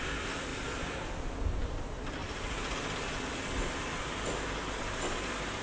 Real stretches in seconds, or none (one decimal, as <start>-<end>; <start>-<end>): 0.0-5.6